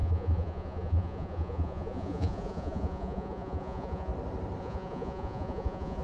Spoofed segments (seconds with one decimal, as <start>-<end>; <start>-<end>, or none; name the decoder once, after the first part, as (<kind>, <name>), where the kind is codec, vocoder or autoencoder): 0.0-4.1 (vocoder, Vocos); 4.6-6.0

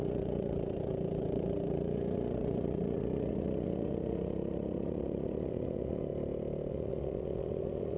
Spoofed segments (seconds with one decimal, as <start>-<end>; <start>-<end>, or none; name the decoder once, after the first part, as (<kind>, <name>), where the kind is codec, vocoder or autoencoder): 0.0-6.1 (vocoder, Vocos); 6.7-8.0

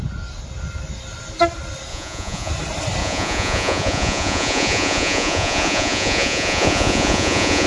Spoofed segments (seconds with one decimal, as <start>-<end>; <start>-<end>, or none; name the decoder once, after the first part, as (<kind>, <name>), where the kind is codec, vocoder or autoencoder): 1.9-2.5 (vocoder, Vocos); 3.0-7.7

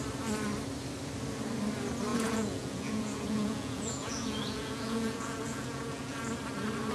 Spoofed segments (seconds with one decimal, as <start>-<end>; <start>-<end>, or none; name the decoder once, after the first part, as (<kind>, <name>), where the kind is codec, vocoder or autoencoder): 2.1-6.2 (vocoder, Vocos)

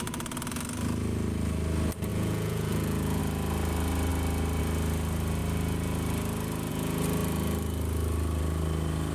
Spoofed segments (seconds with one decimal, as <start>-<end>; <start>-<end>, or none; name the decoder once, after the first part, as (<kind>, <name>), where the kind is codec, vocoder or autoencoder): 2.1-3.2 (vocoder, Vocos)

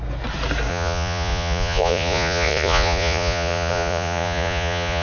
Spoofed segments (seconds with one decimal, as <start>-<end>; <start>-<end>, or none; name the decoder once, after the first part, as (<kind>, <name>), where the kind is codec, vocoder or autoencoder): 0.7-5.0 (vocoder, Vocos)